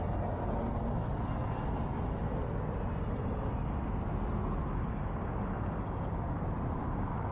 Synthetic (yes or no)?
no